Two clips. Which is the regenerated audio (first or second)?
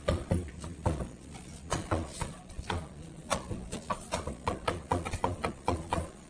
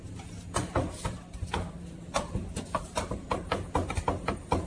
first